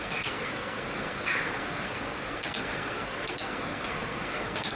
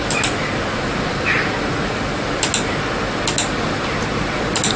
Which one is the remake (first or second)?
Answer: first